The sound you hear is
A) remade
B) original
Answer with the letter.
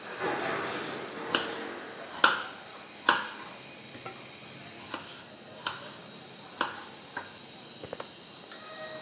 B